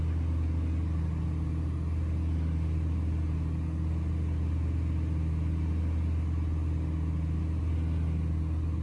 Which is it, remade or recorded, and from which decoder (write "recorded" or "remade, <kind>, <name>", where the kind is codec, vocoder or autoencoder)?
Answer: recorded